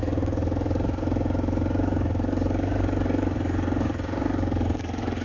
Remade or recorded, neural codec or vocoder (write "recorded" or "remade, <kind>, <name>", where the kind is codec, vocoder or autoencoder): remade, codec, DAC